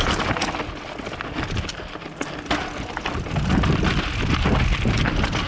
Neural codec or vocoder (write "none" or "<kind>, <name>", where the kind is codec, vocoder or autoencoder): none